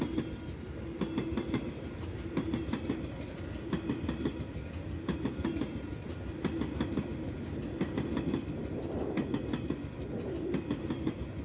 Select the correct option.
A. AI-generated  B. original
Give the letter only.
B